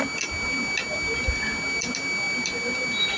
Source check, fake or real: real